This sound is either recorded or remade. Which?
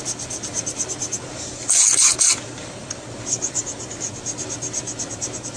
remade